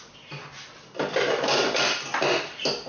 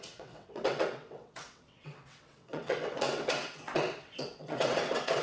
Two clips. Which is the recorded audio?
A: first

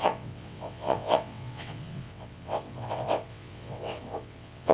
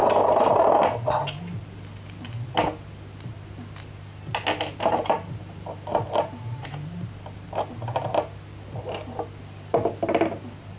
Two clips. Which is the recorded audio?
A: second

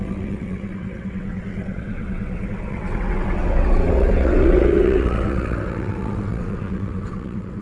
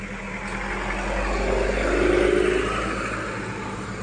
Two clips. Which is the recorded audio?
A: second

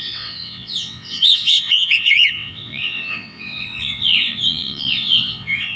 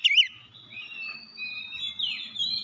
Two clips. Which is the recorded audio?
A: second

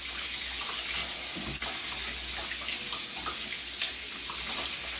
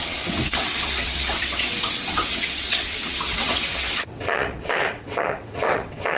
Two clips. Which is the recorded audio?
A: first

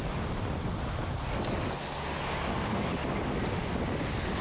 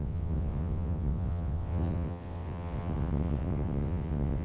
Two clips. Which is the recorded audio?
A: first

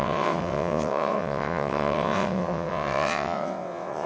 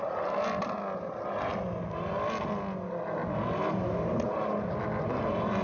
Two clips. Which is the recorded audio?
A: second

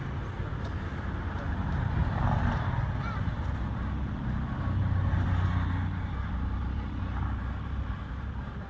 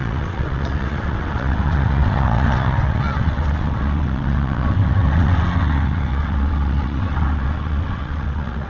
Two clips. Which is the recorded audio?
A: first